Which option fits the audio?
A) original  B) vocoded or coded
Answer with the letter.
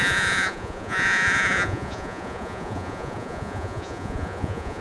B